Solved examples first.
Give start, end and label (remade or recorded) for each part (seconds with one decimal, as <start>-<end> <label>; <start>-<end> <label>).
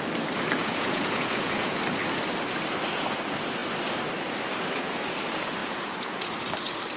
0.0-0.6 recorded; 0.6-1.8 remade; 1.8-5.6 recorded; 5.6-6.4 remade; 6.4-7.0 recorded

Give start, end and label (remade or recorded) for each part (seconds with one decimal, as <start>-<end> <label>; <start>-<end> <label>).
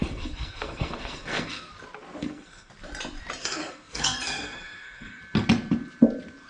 0.0-1.7 remade; 1.7-2.2 recorded; 2.2-2.7 remade; 2.7-3.4 recorded; 3.4-5.2 remade; 5.2-6.5 recorded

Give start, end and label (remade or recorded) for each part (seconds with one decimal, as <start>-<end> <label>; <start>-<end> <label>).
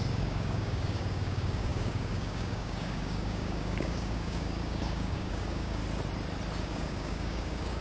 0.0-5.8 remade; 5.8-6.6 recorded; 6.6-7.8 remade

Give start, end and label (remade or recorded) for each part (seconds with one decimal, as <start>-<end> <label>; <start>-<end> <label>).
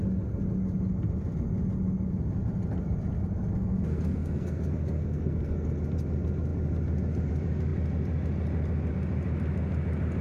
0.0-3.9 recorded; 3.9-5.8 remade; 5.8-10.2 recorded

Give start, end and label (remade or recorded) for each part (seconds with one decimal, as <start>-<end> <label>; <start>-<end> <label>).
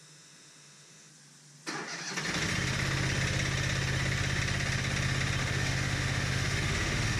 0.0-1.1 remade; 1.1-5.4 recorded; 5.4-7.2 remade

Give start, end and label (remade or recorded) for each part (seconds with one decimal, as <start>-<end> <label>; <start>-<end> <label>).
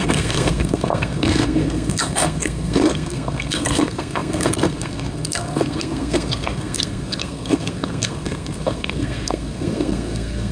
0.0-10.5 remade